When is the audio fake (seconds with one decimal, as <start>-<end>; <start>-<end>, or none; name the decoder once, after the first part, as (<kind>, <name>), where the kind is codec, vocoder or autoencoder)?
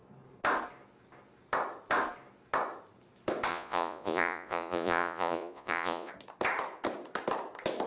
3.5-6.1 (vocoder, Vocos)